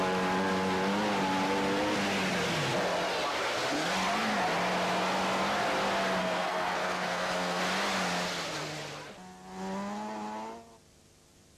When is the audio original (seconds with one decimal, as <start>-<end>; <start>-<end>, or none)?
0.0-6.2; 7.6-11.6